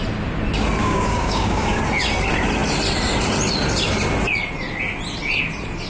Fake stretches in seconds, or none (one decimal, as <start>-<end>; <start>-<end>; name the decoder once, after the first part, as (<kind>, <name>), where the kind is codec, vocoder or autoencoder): 0.8-1.8 (codec, DAC)